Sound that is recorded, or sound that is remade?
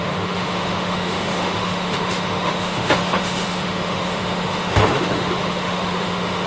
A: remade